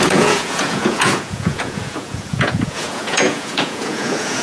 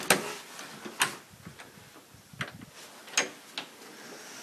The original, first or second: second